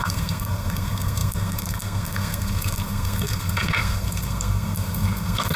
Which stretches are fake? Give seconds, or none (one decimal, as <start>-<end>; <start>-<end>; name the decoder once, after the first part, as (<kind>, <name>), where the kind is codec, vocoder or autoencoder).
0.0-5.6 (codec, SNAC)